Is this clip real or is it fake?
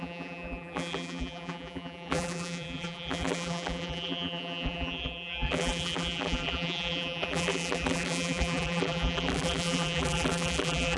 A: fake